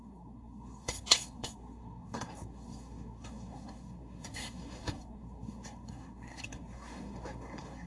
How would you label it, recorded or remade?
remade